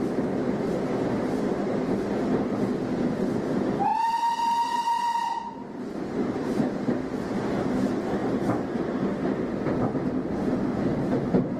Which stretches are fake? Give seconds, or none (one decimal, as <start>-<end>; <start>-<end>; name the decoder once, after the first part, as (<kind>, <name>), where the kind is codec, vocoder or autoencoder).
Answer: none